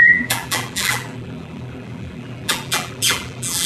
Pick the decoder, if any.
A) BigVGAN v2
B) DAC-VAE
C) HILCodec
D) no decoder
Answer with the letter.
A